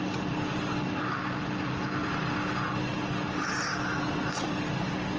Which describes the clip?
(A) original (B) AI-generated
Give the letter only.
A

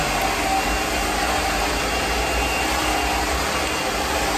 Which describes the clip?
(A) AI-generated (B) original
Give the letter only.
B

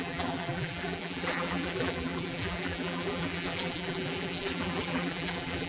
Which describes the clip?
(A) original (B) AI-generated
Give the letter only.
B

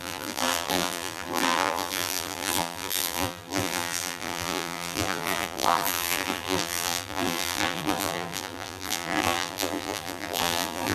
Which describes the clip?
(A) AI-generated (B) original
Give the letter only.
A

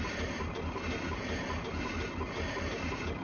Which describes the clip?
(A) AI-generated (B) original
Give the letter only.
B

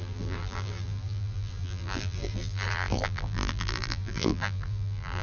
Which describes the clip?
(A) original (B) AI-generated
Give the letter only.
B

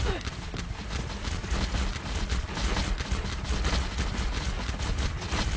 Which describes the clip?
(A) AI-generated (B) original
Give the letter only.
A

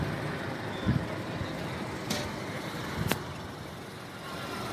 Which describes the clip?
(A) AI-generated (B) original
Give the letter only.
B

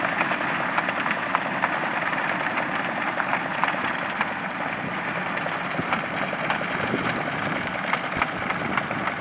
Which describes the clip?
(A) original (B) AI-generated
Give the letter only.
B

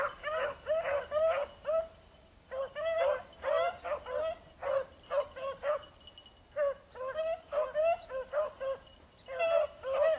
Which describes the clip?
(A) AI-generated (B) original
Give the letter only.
B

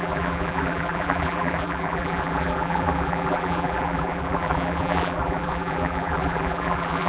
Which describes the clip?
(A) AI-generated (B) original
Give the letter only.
A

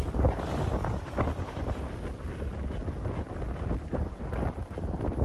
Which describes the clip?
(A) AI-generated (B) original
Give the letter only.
A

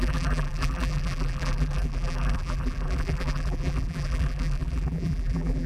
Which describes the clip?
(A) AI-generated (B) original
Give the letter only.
A